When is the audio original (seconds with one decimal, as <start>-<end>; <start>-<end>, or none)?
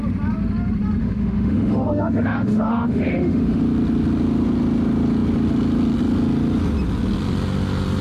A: 0.0-1.0; 3.6-8.0